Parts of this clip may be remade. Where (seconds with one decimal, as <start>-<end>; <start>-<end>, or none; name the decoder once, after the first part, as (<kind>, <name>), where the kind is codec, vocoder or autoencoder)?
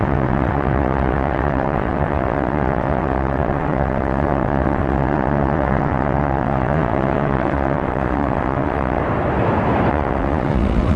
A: 0.0-9.0 (vocoder, WaveNeXt); 9.9-11.0